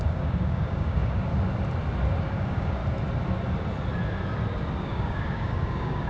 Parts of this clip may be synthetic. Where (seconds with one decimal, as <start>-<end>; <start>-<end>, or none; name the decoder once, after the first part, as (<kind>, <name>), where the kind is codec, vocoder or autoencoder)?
0.0-1.3 (codec, DAC); 2.2-2.8; 4.8-6.1